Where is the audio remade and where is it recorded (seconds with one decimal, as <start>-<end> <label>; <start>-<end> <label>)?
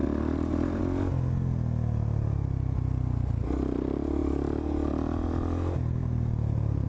0.0-0.8 remade; 0.8-6.0 recorded; 6.0-6.9 remade